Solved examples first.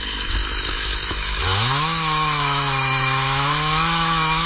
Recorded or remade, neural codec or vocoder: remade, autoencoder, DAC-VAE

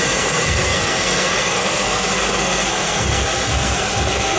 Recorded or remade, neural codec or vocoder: remade, codec, SNAC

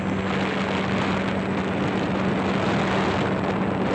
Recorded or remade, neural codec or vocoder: recorded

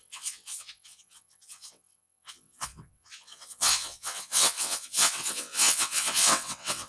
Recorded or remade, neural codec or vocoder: remade, vocoder, WaveNeXt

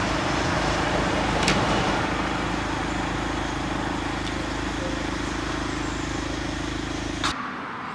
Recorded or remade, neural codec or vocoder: recorded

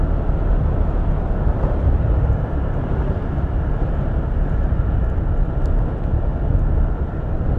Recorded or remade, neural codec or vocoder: recorded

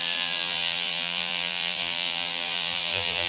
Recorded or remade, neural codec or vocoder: remade, vocoder, BigVGAN v2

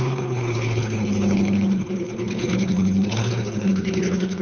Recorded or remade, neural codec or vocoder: remade, codec, HILCodec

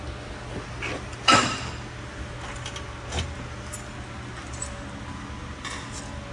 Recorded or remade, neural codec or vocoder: recorded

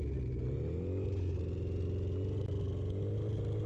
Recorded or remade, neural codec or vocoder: recorded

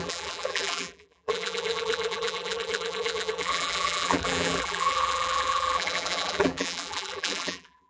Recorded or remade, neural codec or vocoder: remade, vocoder, BigVGAN v2